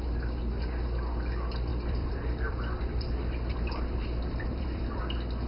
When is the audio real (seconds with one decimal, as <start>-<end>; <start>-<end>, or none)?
0.0-1.7; 5.0-5.5